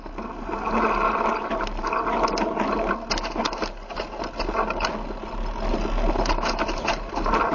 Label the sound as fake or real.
real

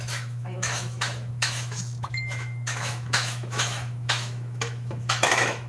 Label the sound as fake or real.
fake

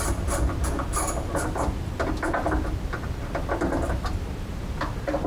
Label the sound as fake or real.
real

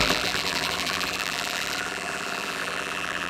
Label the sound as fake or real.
fake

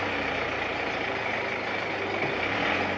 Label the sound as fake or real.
real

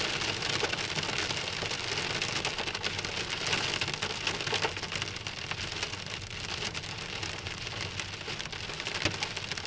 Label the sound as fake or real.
real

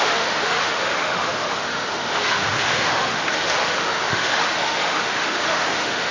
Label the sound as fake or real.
fake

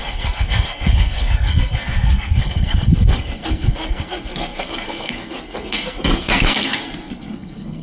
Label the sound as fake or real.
fake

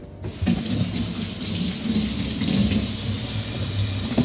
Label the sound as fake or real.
real